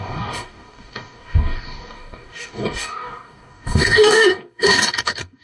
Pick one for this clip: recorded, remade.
remade